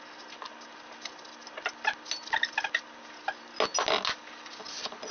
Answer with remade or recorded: recorded